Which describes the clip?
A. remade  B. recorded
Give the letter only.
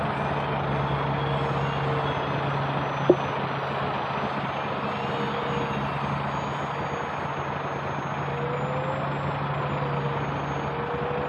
B